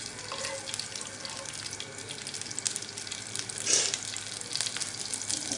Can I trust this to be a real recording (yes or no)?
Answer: yes